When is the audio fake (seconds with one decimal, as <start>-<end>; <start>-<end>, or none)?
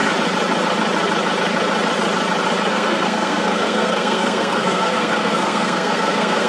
2.7-6.5